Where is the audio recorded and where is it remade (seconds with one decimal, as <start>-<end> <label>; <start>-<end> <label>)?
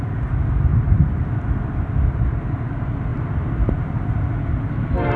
0.0-0.7 recorded; 0.7-1.2 remade; 1.2-3.1 recorded; 3.1-4.1 remade; 4.1-5.2 recorded